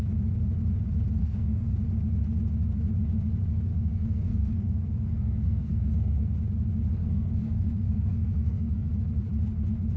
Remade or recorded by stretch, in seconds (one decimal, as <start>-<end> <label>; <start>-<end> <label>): 0.0-1.2 recorded; 1.2-1.7 remade; 1.7-3.7 recorded; 3.7-6.3 remade; 6.3-7.0 recorded; 7.0-8.9 remade; 8.9-10.0 recorded

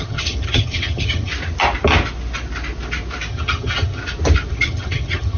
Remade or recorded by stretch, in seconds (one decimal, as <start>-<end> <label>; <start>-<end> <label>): 0.0-1.3 remade; 1.3-3.3 recorded; 3.3-4.0 remade; 4.0-4.5 recorded; 4.5-5.4 remade